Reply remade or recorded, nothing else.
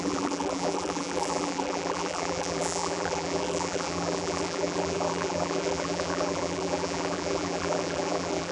remade